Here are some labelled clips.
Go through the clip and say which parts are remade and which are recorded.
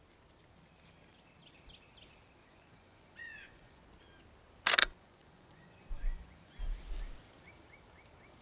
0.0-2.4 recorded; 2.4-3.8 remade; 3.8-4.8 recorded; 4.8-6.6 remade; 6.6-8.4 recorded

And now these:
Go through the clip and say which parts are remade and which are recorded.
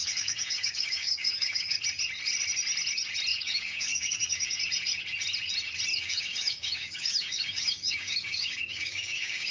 0.0-1.8 remade; 1.8-3.3 recorded; 3.3-4.6 remade; 4.6-5.9 recorded; 5.9-9.5 remade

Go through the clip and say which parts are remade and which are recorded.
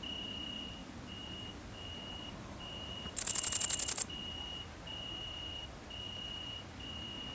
0.0-0.8 recorded; 0.8-4.6 remade; 4.6-5.6 recorded; 5.6-6.6 remade; 6.6-7.3 recorded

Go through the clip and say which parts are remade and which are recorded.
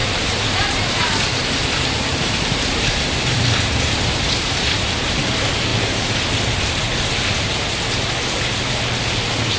0.0-5.0 remade; 5.0-5.7 recorded; 5.7-6.8 remade; 6.8-9.6 recorded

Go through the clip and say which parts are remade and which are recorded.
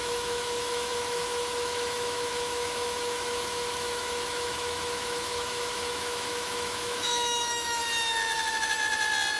0.0-7.8 remade; 7.8-9.4 recorded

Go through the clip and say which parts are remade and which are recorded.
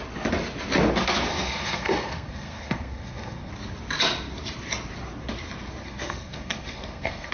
0.0-1.3 recorded; 1.3-3.5 remade; 3.5-5.8 recorded; 5.8-7.3 remade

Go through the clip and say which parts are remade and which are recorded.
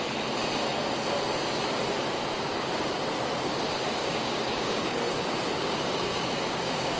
0.0-2.5 recorded; 2.5-3.0 remade; 3.0-4.0 recorded; 4.0-5.0 remade; 5.0-5.6 recorded; 5.6-7.0 remade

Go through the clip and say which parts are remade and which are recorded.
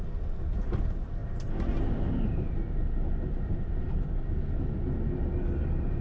0.0-6.0 recorded